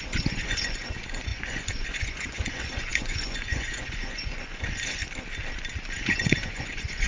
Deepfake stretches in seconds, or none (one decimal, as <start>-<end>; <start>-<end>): 0.0-5.0; 6.0-7.1